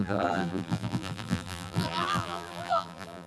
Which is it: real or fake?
fake